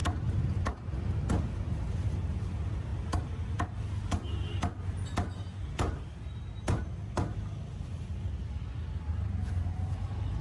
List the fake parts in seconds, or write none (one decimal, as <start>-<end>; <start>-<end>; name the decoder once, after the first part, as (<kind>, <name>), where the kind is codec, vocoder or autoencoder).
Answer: none